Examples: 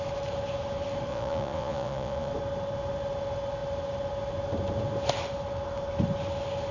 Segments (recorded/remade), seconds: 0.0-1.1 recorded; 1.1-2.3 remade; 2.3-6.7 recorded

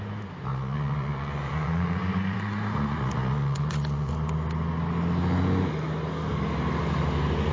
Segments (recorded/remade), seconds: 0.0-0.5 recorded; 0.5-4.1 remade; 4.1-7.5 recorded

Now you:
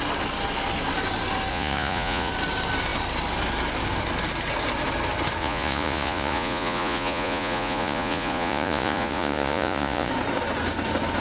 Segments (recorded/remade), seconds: 0.0-1.5 recorded; 1.5-2.3 remade; 2.3-5.4 recorded; 5.4-10.1 remade; 10.1-11.2 recorded

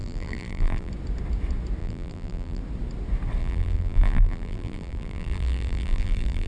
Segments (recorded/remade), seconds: 0.0-0.9 remade; 0.9-1.8 recorded; 1.8-2.6 remade; 2.6-3.4 recorded; 3.4-6.5 remade